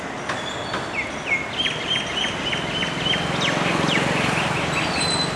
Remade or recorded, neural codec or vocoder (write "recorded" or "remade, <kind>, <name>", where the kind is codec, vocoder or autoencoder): recorded